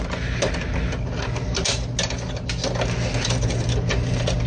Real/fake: real